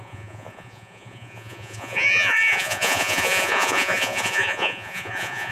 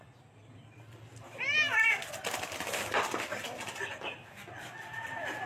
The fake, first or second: first